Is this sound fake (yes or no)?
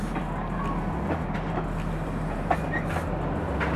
no